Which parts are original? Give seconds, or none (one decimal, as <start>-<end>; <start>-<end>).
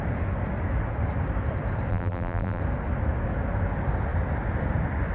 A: 0.0-1.9; 2.6-5.1